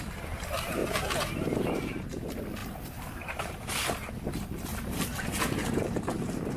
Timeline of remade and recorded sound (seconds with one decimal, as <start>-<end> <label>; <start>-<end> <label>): 0.0-0.8 recorded; 0.8-1.8 remade; 1.8-2.6 recorded; 2.6-4.1 remade; 4.1-4.7 recorded; 4.7-6.6 remade

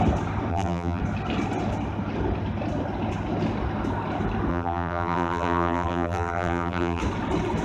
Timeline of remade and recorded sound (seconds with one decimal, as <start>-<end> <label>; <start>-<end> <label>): 0.0-0.5 recorded; 0.5-1.0 remade; 1.0-4.5 recorded; 4.5-7.0 remade; 7.0-7.6 recorded